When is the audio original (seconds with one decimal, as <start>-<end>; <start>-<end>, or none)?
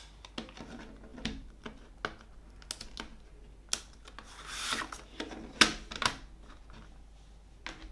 0.0-7.9